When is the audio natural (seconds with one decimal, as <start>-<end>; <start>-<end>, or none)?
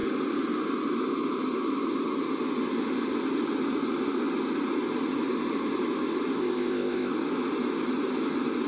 0.0-6.4; 7.1-8.7